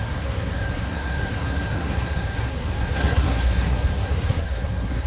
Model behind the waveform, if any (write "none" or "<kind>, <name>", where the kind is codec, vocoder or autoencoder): codec, SNAC